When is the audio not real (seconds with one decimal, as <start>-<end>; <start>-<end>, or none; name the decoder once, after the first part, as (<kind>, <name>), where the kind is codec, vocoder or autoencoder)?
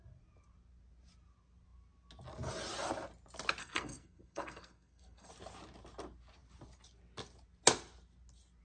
3.6-5.3 (codec, SNAC)